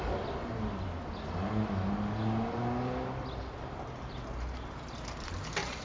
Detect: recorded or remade recorded